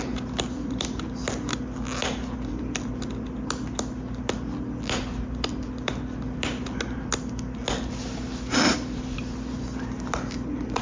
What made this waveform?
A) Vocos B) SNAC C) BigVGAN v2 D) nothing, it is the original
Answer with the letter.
D